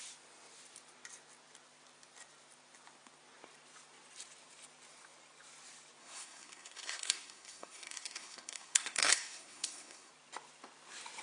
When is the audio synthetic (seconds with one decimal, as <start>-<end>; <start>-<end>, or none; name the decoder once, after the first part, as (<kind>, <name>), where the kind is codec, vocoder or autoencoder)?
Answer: 6.0-10.1 (codec, SNAC)